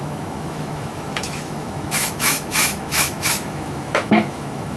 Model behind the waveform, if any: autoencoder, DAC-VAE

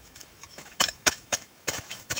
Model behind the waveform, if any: autoencoder, DAC-VAE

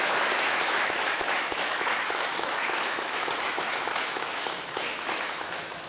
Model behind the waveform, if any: autoencoder, DAC-VAE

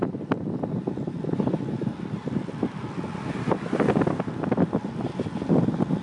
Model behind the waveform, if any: none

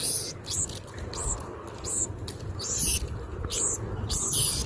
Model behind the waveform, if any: none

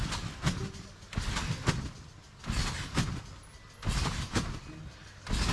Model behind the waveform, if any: none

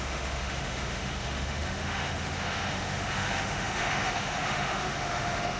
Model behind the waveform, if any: autoencoder, DAC-VAE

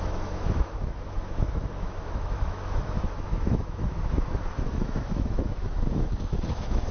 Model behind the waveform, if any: autoencoder, DAC-VAE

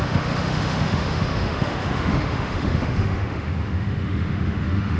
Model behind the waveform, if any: autoencoder, DAC-VAE